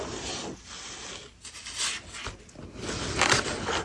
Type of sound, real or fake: real